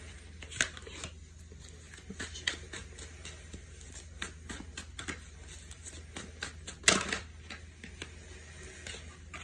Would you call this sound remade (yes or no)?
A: no